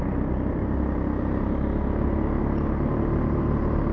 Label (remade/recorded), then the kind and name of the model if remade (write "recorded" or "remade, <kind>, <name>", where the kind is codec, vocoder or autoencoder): recorded